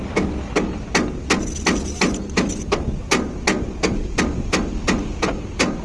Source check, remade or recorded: recorded